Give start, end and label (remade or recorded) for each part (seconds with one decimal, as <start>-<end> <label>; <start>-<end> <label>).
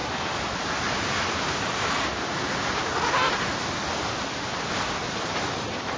0.0-2.1 remade; 2.1-2.8 recorded; 2.8-3.6 remade; 3.6-5.3 recorded; 5.3-6.0 remade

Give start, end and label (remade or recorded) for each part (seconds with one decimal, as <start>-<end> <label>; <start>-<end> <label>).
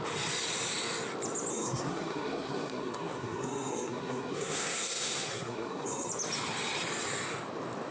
0.0-1.5 recorded; 1.5-6.1 remade; 6.1-7.9 recorded